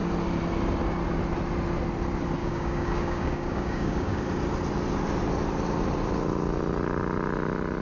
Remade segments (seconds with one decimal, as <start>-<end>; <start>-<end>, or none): 2.4-4.2